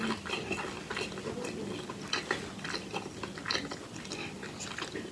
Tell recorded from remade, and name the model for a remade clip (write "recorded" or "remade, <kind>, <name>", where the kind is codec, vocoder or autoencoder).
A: recorded